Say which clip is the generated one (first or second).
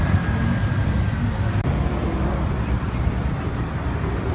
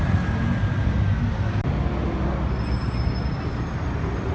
first